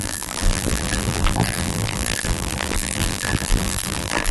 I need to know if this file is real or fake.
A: fake